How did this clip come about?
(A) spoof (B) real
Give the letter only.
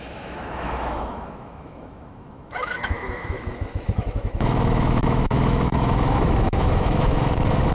A